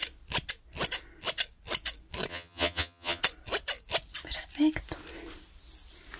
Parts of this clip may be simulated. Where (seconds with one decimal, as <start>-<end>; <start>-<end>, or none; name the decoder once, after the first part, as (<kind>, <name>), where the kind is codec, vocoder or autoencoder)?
2.3-3.2 (vocoder, HiFi-GAN)